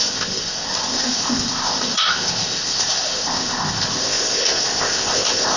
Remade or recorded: remade